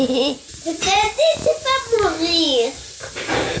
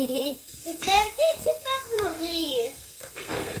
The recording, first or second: first